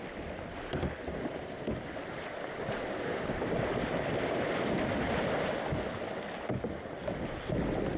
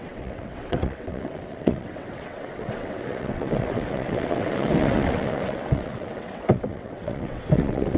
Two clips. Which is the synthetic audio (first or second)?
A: second